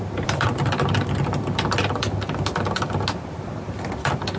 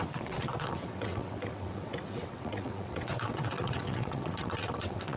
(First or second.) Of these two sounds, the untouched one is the first